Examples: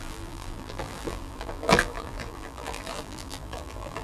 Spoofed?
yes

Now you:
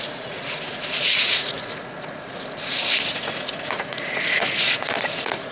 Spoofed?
yes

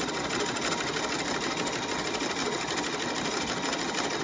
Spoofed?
no